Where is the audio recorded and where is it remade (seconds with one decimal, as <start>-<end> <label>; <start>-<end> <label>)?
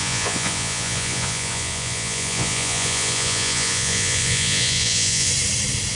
0.0-5.3 remade; 5.3-5.9 recorded